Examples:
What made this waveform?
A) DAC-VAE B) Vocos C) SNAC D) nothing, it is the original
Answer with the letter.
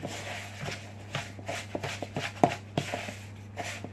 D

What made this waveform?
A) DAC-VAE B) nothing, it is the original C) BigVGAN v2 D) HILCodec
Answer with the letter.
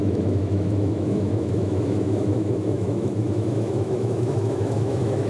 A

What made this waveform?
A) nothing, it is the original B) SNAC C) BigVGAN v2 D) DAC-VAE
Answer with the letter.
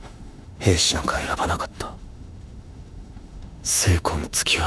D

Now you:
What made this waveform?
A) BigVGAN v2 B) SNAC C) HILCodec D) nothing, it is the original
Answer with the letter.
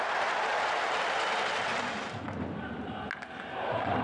D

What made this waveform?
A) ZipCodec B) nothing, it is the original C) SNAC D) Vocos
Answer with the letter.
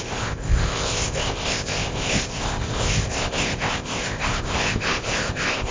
A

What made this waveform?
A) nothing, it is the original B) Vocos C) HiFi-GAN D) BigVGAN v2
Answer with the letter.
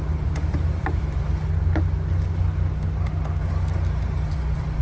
A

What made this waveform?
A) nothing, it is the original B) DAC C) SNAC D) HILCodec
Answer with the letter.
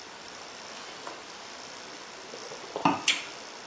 A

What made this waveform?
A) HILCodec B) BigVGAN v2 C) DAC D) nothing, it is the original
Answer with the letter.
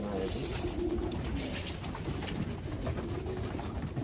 D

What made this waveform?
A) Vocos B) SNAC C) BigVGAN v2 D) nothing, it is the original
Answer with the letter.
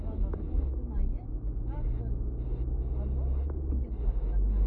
D